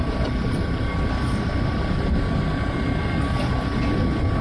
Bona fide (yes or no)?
yes